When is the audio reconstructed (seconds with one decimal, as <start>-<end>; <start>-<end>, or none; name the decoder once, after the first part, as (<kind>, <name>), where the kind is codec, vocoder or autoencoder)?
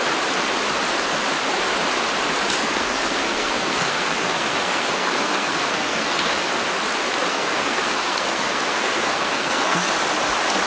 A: 2.6-6.5 (codec, SNAC); 7.3-9.9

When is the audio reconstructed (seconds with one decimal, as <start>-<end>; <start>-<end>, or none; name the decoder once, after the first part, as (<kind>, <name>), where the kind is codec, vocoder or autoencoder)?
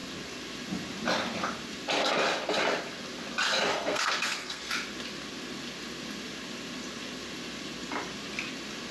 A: 3.7-4.7 (codec, SNAC)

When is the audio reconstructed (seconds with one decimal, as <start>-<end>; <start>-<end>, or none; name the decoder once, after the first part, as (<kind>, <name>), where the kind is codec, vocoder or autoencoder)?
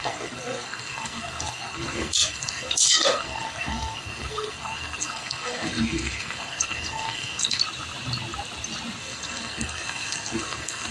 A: 0.0-7.6 (codec, SNAC); 9.0-10.9